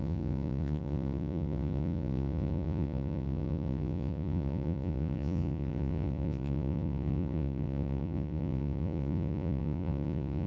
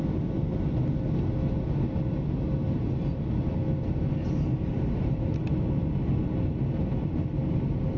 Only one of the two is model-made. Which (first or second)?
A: first